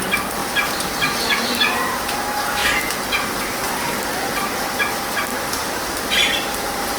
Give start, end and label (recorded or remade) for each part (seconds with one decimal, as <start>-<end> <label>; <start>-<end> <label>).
0.0-7.0 recorded